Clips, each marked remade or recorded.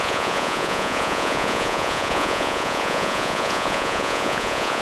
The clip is remade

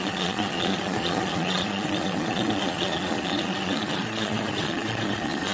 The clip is remade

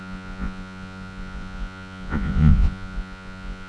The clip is remade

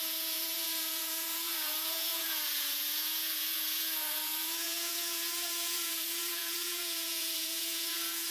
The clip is remade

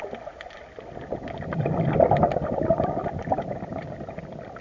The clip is recorded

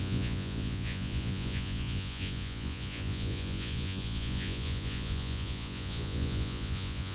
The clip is remade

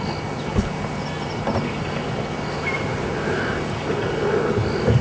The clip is recorded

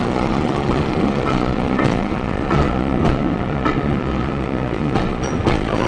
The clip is remade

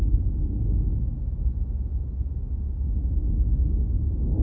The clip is recorded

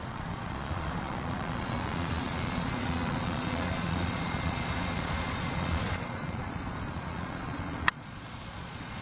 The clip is remade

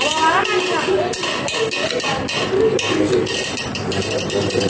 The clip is recorded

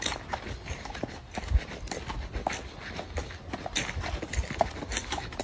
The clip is recorded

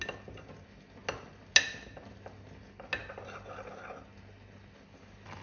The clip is recorded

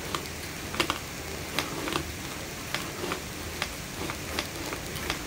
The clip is recorded